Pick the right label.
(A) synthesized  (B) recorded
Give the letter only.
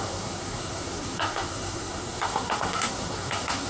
A